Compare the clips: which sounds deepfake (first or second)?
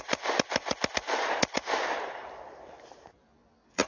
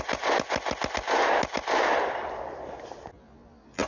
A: first